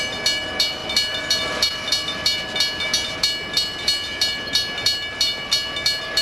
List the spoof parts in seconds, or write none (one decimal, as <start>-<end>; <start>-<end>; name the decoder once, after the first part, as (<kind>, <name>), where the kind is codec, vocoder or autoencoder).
none